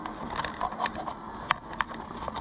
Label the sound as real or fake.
real